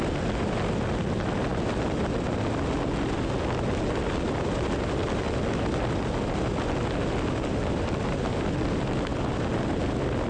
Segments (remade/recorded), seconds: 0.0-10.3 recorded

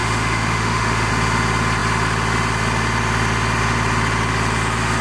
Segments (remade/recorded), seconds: 0.0-1.1 remade; 1.1-5.0 recorded

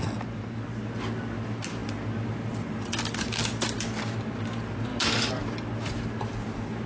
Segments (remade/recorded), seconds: 0.0-6.9 recorded

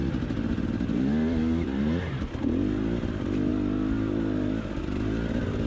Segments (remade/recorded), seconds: 0.0-5.7 recorded

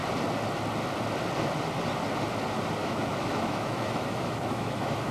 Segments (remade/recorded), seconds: 0.0-2.8 recorded; 2.8-5.1 remade